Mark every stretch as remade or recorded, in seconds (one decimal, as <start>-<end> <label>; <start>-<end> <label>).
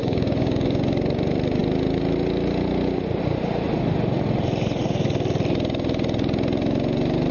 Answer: 0.0-0.8 remade; 0.8-7.3 recorded